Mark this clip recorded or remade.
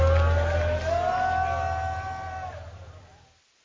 recorded